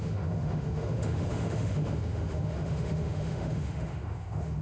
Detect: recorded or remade remade